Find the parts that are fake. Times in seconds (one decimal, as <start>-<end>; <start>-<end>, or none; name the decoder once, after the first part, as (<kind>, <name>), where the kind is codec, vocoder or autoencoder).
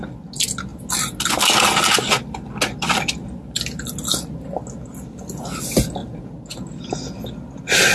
none